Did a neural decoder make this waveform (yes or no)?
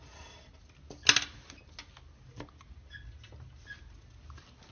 no